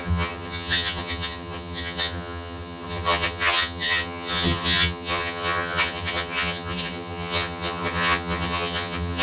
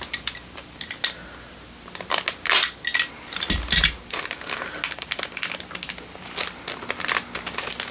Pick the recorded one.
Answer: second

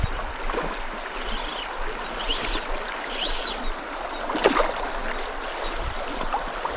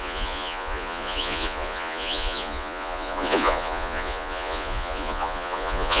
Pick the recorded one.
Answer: first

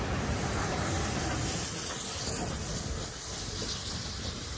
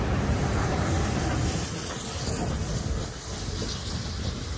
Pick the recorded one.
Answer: second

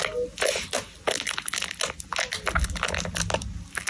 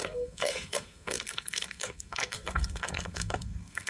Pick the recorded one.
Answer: first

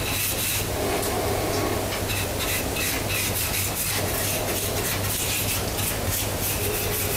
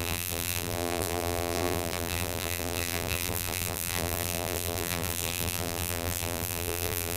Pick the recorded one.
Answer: first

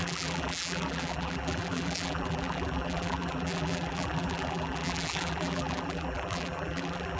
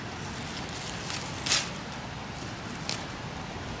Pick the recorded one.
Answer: second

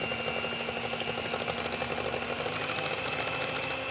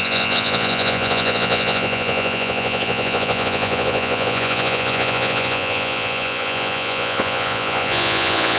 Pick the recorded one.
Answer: first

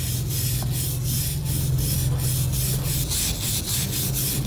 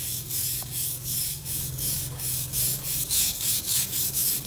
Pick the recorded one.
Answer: first